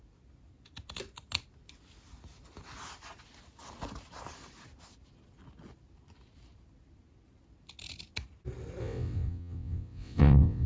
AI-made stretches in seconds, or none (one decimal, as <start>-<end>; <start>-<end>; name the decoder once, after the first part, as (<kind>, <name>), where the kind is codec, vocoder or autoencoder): 8.8-10.7 (vocoder, WaveNeXt)